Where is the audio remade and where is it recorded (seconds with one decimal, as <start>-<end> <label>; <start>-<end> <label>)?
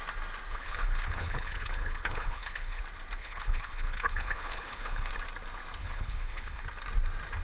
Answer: 0.0-0.5 recorded; 0.5-2.8 remade; 2.8-3.2 recorded; 3.2-5.1 remade; 5.1-5.8 recorded; 5.8-6.6 remade; 6.6-7.4 recorded